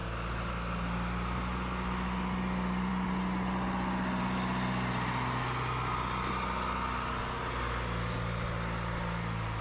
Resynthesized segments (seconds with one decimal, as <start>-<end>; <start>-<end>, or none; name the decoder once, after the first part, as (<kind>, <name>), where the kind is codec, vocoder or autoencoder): none